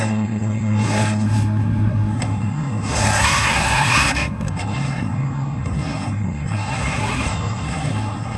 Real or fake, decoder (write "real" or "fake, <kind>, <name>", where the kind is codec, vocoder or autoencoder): fake, codec, SNAC